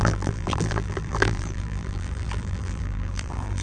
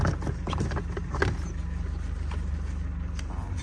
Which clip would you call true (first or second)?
second